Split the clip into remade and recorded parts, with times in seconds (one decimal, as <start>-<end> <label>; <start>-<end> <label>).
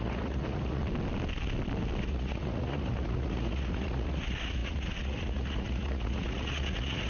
0.0-0.8 remade; 0.8-2.0 recorded; 2.0-7.1 remade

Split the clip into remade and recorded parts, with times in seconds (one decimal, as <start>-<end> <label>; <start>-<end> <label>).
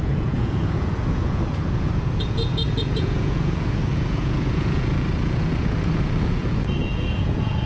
0.0-7.7 remade